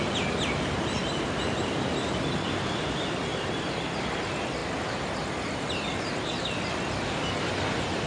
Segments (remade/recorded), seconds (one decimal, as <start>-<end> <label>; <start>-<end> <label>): 0.0-8.1 recorded